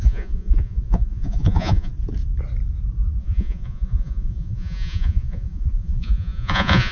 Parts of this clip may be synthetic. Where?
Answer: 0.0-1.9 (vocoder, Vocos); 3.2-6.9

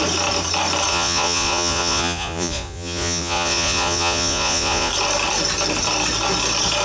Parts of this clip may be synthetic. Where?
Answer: 0.9-4.9 (vocoder, Vocos)

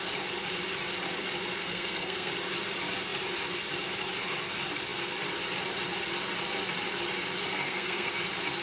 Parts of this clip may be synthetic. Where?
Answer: 1.6-2.3 (codec, SNAC); 7.5-8.1

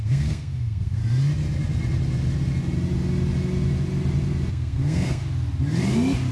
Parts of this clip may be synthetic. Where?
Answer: 0.0-1.0 (codec, SNAC); 4.5-5.2

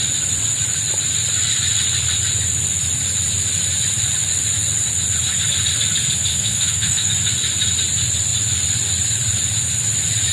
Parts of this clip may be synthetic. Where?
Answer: 6.3-7.1 (codec, SNAC)

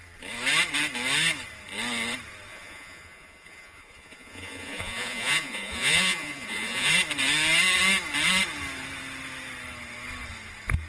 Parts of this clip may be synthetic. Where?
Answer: 2.5-6.9 (vocoder, Vocos)

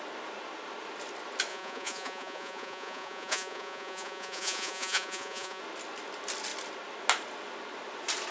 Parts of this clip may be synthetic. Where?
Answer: 1.5-5.6 (vocoder, Vocos)

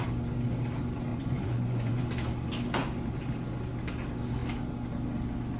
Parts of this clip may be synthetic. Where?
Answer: 1.1-2.0 (vocoder, Vocos)